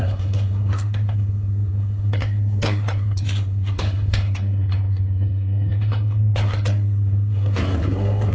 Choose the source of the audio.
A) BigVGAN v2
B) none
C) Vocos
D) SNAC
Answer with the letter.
D